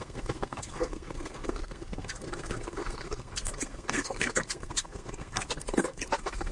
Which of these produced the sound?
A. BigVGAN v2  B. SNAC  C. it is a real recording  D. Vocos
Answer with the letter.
B